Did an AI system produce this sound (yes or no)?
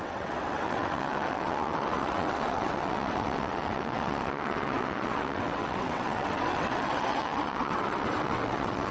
yes